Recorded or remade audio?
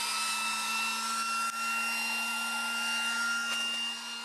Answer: recorded